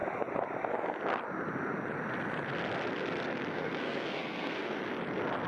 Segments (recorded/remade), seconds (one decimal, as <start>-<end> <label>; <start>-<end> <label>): 0.0-3.5 recorded; 3.5-4.8 remade; 4.8-5.5 recorded